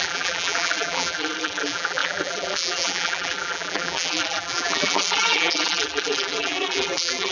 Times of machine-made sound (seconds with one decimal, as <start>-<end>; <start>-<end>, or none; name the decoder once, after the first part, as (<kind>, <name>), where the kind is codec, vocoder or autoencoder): 0.0-7.3 (vocoder, BigVGAN v2)